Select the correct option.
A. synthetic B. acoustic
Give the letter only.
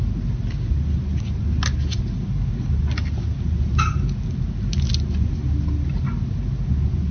B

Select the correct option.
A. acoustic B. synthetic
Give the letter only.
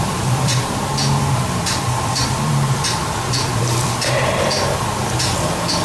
B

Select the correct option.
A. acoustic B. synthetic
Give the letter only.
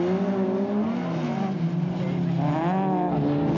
A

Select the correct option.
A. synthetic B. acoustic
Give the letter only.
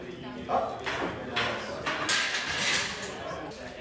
B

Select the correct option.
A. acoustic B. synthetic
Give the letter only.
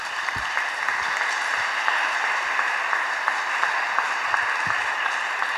B